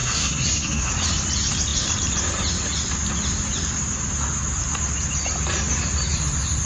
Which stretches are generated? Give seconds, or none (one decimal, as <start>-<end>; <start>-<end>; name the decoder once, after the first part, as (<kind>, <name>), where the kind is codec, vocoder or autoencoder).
0.0-0.9 (codec, SNAC)